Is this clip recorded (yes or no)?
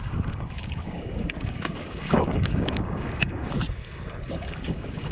no